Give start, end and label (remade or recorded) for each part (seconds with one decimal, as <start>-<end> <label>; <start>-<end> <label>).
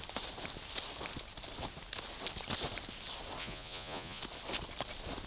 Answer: 0.0-3.4 recorded; 3.4-4.2 remade; 4.2-5.3 recorded